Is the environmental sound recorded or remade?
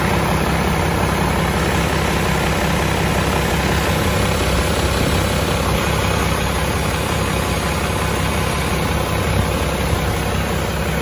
recorded